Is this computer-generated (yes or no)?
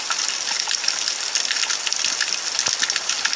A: no